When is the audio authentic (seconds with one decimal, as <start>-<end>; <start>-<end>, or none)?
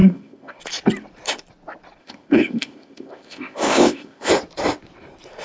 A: 0.6-2.0; 4.3-5.4